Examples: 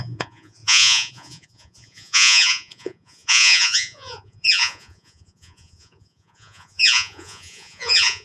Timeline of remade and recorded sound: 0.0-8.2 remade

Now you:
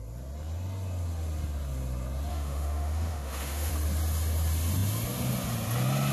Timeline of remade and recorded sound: 0.0-2.3 recorded; 2.3-3.7 remade; 3.7-6.1 recorded

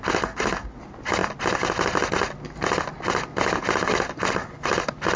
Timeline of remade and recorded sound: 0.0-5.2 recorded

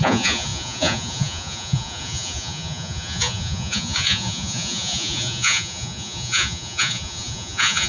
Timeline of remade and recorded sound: 0.0-7.9 remade

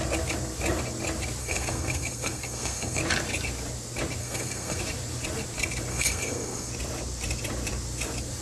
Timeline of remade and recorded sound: 0.0-1.4 recorded; 1.4-3.0 remade; 3.0-4.2 recorded; 4.2-4.8 remade; 4.8-5.9 recorded; 5.9-6.7 remade; 6.7-8.4 recorded

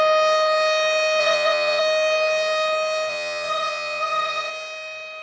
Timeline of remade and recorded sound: 0.0-1.2 recorded; 1.2-1.8 remade; 1.8-3.1 recorded; 3.1-4.5 remade; 4.5-5.2 recorded

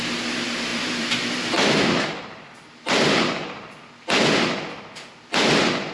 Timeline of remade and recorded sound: 0.0-0.7 recorded; 0.7-3.9 remade; 3.9-5.9 recorded

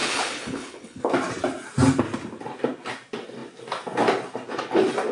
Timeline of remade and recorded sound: 0.0-1.0 remade; 1.0-5.1 recorded